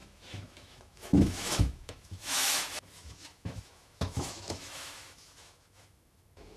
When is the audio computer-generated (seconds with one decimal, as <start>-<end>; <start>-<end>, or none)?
0.0-6.6